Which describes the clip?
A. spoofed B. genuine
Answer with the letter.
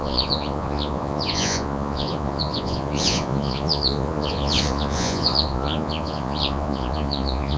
A